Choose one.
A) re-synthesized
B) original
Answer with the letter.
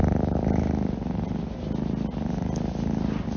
B